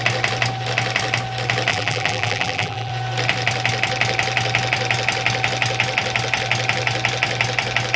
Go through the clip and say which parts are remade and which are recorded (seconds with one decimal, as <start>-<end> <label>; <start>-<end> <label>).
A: 0.0-1.7 recorded; 1.7-2.9 remade; 2.9-8.0 recorded